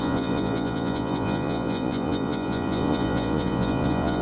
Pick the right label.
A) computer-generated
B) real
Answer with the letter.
A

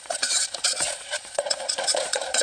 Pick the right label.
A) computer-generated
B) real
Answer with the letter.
A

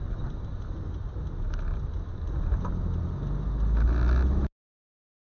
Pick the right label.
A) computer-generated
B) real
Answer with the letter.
B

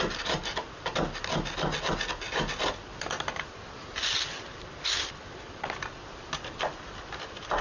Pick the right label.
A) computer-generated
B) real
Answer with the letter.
B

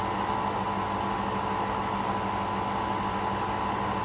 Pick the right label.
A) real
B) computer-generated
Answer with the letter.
A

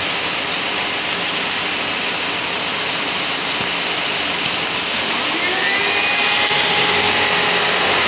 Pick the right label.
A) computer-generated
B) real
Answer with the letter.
B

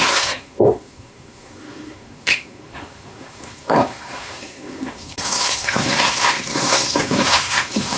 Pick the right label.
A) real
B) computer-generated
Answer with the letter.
B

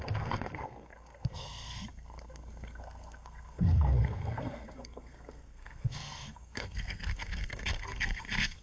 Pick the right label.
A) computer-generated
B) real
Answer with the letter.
A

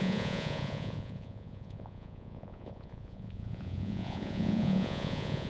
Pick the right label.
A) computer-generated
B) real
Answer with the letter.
A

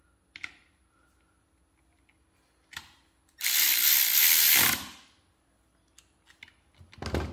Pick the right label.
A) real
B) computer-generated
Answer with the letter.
A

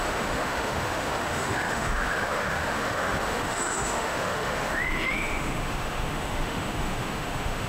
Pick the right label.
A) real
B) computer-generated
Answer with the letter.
B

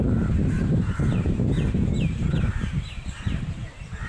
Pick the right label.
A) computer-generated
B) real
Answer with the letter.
A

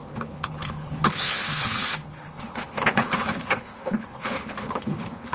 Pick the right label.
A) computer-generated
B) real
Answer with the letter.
A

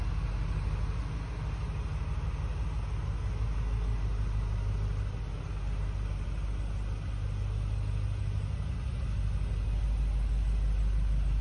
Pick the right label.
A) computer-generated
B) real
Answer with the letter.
B